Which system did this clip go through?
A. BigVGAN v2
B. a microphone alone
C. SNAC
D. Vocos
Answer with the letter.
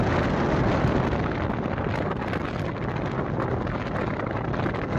B